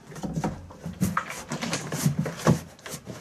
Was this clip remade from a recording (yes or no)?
no